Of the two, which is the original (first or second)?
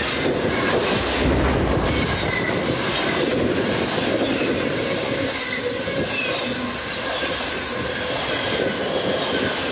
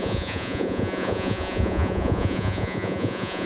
first